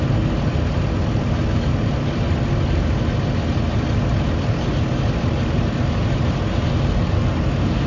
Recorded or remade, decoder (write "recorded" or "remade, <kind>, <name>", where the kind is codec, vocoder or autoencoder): recorded